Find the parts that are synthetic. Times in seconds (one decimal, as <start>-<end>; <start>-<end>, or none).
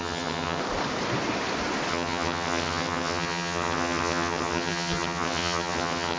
0.0-0.6; 1.9-6.2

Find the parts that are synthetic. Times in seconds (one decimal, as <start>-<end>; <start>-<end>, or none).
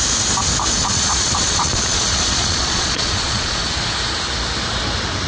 0.8-3.6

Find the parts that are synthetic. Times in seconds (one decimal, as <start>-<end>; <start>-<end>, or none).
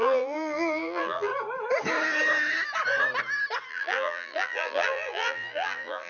0.0-1.3; 3.7-6.1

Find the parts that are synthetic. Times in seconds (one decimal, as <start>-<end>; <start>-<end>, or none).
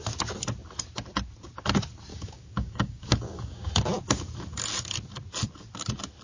2.1-3.7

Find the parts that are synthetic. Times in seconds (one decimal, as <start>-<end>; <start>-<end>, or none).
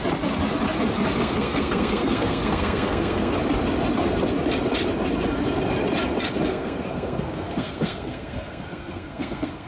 1.2-3.3; 6.5-9.7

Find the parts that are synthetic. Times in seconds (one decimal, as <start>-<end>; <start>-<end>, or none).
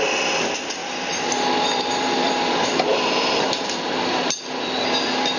0.8-4.0